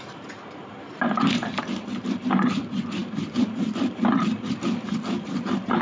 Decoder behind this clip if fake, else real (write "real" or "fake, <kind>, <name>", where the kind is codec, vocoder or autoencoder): fake, vocoder, BigVGAN v2